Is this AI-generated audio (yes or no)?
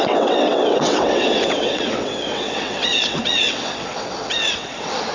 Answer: yes